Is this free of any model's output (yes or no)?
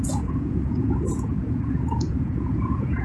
no